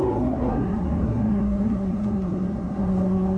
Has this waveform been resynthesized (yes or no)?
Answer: yes